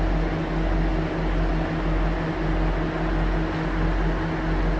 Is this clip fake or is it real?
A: real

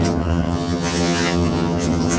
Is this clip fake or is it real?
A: fake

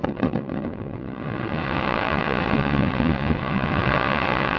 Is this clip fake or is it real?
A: fake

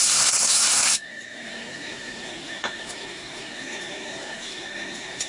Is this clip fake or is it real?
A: fake